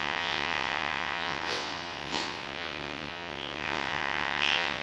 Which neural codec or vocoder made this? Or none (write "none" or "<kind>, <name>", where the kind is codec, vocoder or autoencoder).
vocoder, WaveNeXt